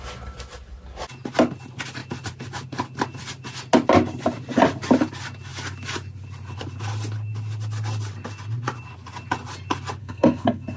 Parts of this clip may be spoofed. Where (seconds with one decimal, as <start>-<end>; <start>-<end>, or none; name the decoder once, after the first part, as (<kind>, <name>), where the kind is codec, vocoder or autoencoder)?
10.0-10.8 (codec, SNAC)